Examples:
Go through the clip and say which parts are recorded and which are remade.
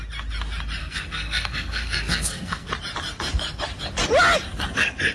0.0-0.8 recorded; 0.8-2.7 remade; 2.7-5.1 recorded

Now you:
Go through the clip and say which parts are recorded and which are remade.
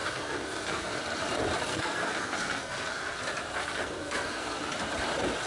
0.0-1.0 remade; 1.0-1.7 recorded; 1.7-3.2 remade; 3.2-3.6 recorded; 3.6-4.6 remade; 4.6-5.5 recorded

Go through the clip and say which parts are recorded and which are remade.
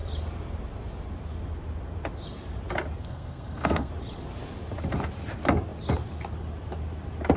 0.0-3.0 recorded; 3.0-3.9 remade; 3.9-7.4 recorded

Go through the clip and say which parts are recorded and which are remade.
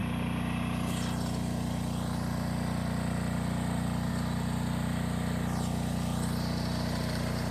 0.0-7.5 recorded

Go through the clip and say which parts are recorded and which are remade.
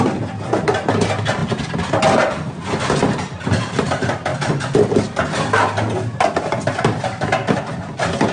0.0-8.3 recorded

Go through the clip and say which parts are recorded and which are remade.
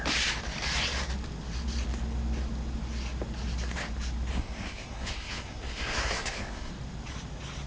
0.0-4.3 recorded; 4.3-6.7 remade; 6.7-7.7 recorded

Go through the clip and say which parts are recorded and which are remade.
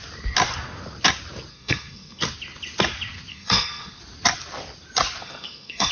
0.0-1.5 recorded; 1.5-2.2 remade; 2.2-3.3 recorded; 3.3-4.0 remade; 4.0-5.2 recorded; 5.2-5.9 remade